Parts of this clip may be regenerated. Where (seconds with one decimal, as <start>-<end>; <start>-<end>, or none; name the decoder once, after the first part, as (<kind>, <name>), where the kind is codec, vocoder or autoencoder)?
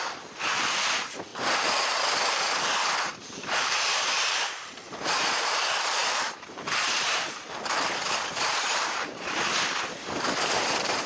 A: 0.0-1.3 (vocoder, BigVGAN v2); 2.3-11.1